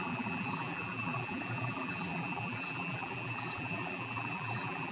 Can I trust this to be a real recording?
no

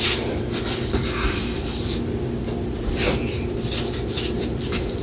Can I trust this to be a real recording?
yes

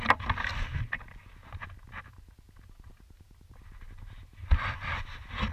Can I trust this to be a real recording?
yes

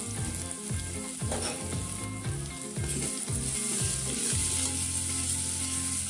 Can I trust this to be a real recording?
yes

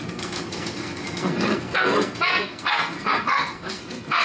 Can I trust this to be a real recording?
no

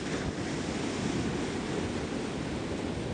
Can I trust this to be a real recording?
yes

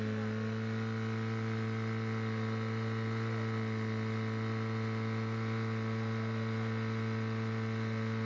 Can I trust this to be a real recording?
yes